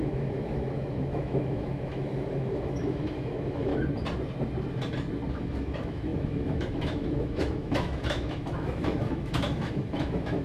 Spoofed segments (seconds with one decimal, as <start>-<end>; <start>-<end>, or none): 0.0-3.7; 5.3-10.4